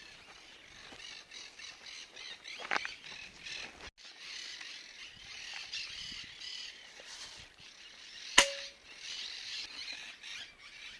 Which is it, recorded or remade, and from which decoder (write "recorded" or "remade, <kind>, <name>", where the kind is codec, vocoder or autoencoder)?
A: recorded